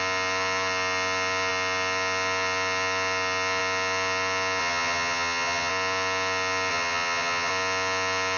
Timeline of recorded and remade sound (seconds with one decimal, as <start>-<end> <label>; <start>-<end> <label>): 0.0-4.6 recorded; 4.6-5.7 remade; 5.7-6.7 recorded; 6.7-7.5 remade; 7.5-8.4 recorded